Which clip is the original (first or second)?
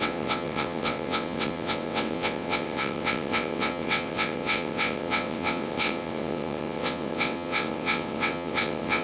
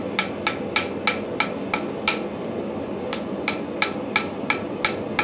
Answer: second